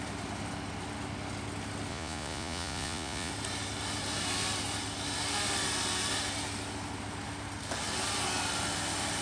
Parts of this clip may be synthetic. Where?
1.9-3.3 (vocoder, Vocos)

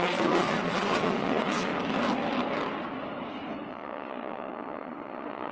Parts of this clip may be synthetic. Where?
0.0-1.7 (vocoder, Vocos); 3.7-5.5

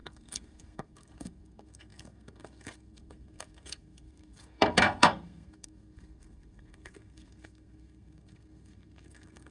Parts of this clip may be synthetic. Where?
0.0-9.5 (codec, SNAC)

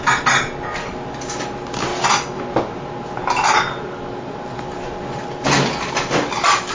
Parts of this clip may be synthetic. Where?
none

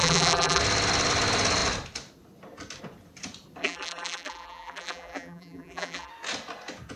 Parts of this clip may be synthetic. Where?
0.0-0.6 (vocoder, BigVGAN v2); 3.6-6.1

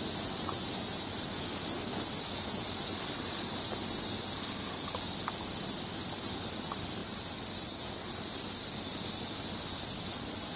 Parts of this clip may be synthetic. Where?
none

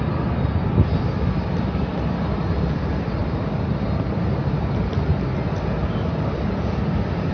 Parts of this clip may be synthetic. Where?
none